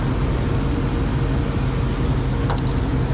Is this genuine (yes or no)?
yes